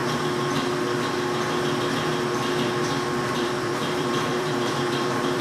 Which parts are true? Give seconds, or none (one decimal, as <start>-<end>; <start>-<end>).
0.0-3.2